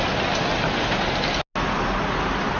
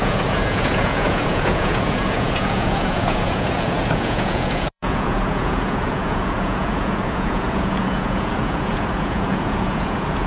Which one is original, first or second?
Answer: first